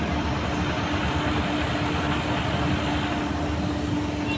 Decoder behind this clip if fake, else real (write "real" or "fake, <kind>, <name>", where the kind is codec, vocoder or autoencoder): real